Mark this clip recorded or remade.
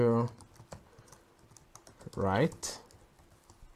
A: recorded